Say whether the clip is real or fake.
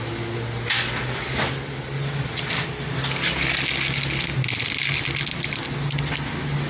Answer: real